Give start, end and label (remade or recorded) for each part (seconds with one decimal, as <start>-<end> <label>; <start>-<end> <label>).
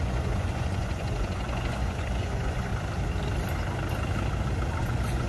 0.0-2.7 remade; 2.7-4.8 recorded; 4.8-5.3 remade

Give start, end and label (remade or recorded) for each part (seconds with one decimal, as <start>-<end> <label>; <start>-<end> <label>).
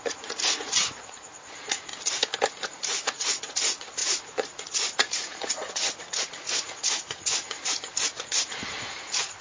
0.0-1.9 remade; 1.9-2.5 recorded; 2.5-9.4 remade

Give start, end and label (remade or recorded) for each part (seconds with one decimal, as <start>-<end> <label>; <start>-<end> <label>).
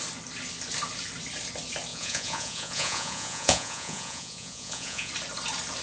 0.0-1.9 recorded; 1.9-5.1 remade; 5.1-5.8 recorded